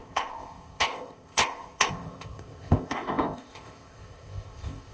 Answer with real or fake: fake